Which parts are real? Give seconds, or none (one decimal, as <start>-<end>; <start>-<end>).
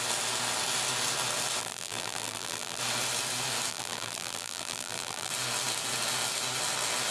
0.0-1.6; 2.8-3.7; 5.3-7.1